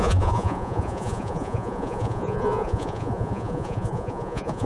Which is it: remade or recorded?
remade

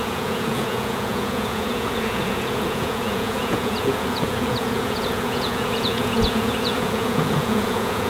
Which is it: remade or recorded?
remade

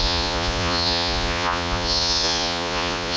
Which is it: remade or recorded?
remade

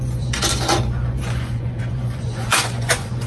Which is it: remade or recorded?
remade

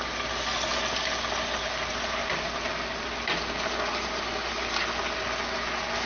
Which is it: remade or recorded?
recorded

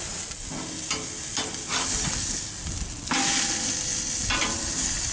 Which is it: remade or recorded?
recorded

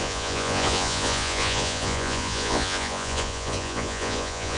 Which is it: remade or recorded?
remade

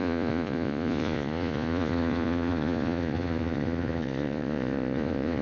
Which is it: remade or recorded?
remade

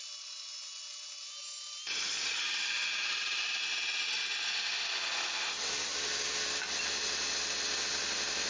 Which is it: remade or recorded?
recorded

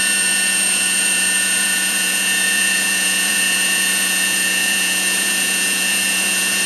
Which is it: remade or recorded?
remade